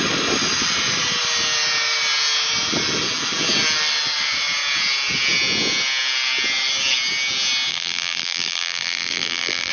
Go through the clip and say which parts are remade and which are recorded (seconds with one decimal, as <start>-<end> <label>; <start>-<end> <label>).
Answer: 0.0-7.7 recorded; 7.7-9.7 remade